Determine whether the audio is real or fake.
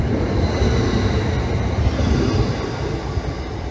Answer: real